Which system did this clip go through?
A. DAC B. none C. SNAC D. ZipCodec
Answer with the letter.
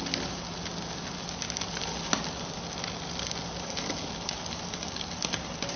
B